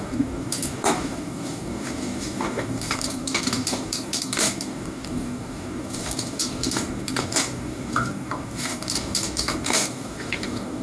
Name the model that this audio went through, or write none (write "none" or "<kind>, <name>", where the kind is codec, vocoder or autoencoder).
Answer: codec, DAC